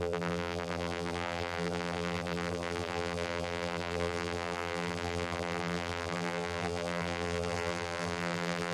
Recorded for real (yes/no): no